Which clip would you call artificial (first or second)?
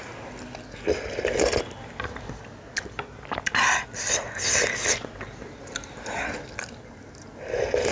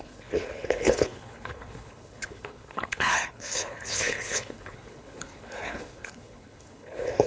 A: second